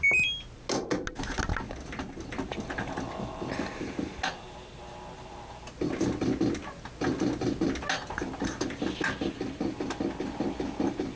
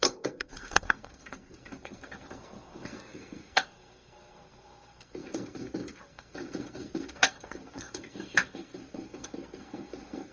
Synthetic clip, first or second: second